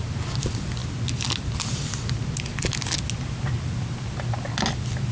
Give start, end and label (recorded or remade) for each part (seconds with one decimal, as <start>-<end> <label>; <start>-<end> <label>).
0.0-5.1 recorded